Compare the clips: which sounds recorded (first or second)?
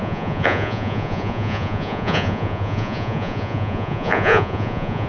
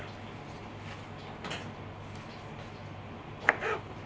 second